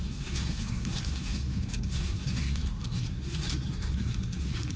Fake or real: fake